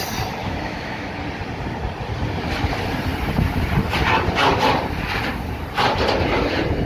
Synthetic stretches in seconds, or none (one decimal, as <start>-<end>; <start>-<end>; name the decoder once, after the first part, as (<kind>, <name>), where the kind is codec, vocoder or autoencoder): 0.4-1.1 (autoencoder, DAC-VAE)